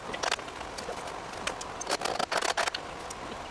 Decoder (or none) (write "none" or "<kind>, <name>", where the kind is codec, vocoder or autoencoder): none